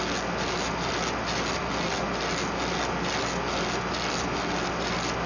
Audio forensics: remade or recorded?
recorded